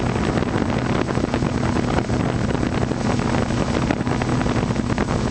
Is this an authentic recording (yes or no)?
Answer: yes